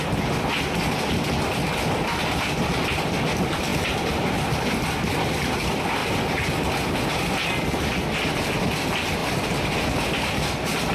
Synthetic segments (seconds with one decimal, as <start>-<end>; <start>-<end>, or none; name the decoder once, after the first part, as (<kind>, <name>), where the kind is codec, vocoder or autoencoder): 3.7-4.7 (vocoder, BigVGAN v2); 9.2-9.8